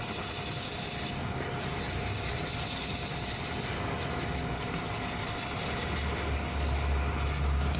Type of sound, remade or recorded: recorded